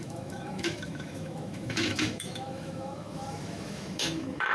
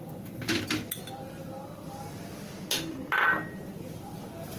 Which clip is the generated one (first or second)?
first